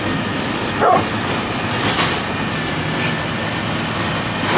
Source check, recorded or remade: recorded